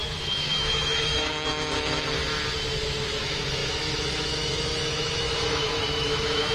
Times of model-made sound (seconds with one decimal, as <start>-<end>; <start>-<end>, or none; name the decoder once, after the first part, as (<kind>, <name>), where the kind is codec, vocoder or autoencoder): 0.0-2.2 (autoencoder, DAC-VAE); 3.2-6.5